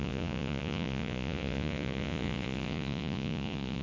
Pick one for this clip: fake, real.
fake